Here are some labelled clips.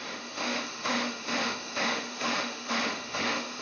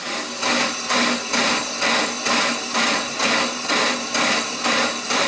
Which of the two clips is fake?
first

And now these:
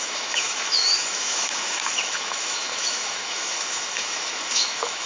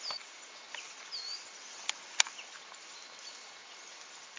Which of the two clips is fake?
first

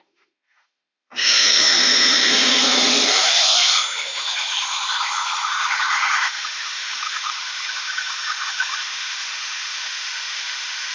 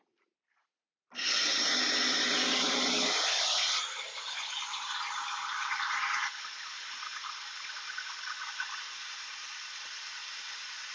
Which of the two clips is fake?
first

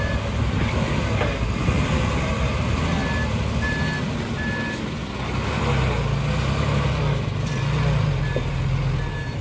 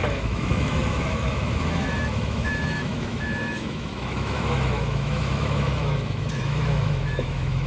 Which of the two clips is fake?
second